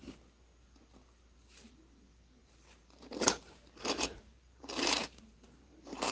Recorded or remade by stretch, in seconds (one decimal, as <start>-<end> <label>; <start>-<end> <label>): 0.0-2.4 recorded; 2.4-6.1 remade